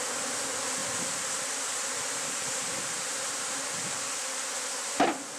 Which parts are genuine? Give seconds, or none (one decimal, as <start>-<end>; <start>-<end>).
0.0-0.8; 4.0-5.4